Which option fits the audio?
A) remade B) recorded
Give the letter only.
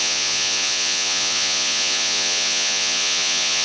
A